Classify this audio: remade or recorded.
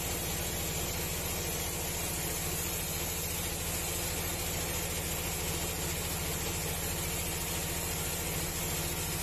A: recorded